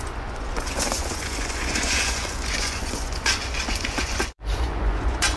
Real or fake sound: fake